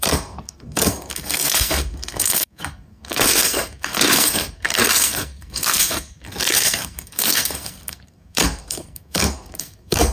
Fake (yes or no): yes